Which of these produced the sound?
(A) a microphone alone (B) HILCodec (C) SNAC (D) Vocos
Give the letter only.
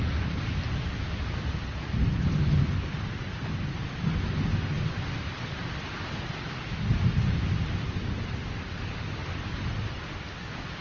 A